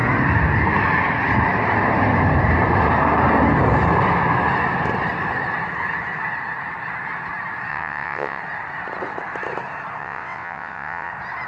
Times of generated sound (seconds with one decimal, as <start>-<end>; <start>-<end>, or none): 7.7-8.4; 10.0-11.1